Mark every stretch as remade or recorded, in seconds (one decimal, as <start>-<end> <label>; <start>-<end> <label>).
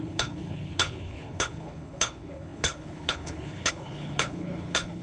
0.0-5.0 remade